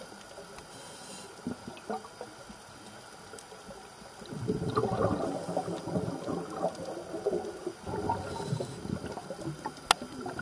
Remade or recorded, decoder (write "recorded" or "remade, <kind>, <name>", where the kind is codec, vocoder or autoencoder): recorded